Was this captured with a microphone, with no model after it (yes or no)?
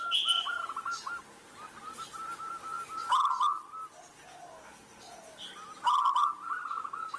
yes